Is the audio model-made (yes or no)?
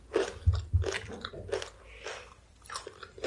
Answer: yes